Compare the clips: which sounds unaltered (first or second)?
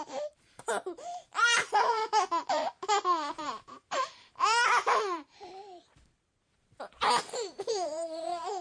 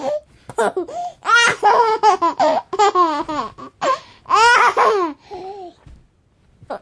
second